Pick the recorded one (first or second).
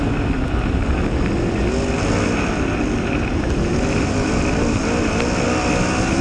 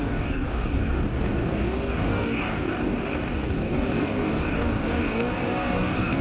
first